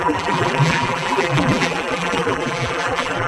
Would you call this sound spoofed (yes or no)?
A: yes